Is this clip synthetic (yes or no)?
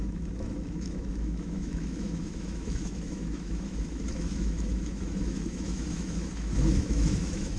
yes